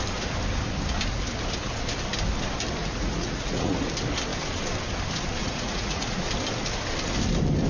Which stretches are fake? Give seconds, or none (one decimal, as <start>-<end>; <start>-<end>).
2.8-3.8; 5.4-6.3